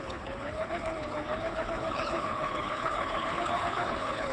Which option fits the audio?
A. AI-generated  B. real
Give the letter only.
A